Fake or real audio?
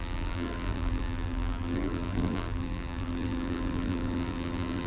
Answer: fake